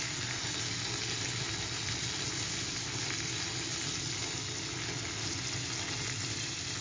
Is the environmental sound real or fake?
real